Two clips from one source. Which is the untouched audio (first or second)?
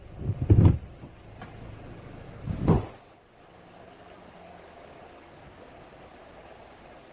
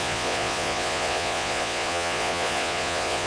first